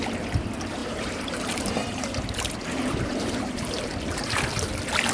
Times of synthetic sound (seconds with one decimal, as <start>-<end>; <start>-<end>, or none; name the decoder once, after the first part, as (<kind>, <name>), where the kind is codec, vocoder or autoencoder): 0.8-3.9 (vocoder, BigVGAN v2)